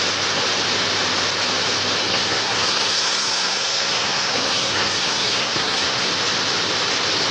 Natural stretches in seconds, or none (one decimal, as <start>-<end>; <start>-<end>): 0.0-2.0; 6.1-7.3